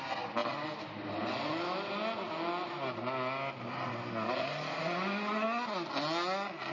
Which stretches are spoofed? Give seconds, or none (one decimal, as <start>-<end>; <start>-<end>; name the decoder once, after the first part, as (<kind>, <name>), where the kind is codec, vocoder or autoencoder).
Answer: none